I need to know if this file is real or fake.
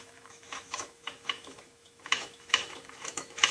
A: fake